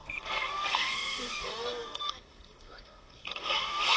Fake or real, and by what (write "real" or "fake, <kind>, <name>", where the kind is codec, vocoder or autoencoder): fake, codec, SNAC